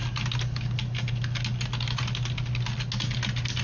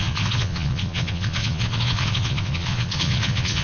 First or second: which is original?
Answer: first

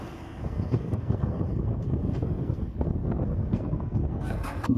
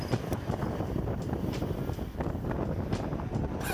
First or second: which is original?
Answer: second